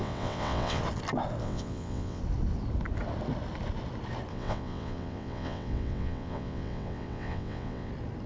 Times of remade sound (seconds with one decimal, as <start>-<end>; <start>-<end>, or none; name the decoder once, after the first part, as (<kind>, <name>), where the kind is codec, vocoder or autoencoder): 0.0-0.8 (vocoder, WaveNeXt); 1.4-2.2; 4.3-7.9